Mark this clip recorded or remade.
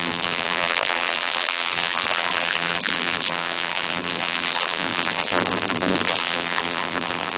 remade